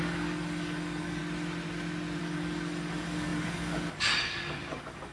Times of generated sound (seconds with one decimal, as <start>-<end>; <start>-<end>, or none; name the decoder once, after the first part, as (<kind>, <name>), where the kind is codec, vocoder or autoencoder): 0.0-1.2 (codec, DAC); 2.2-5.1